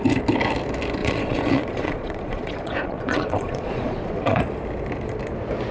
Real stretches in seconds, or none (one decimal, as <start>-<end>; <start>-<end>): 0.0-1.0; 4.4-5.7